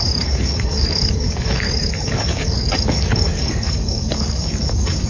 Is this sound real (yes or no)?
no